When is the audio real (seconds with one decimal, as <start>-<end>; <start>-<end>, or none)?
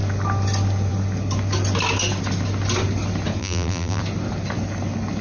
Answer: 0.0-3.4; 4.0-5.2